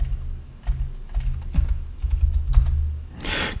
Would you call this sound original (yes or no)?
yes